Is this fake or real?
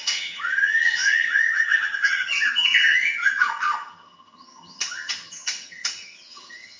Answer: fake